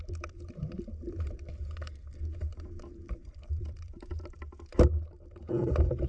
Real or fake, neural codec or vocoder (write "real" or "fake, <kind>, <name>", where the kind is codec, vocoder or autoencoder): fake, vocoder, BigVGAN v2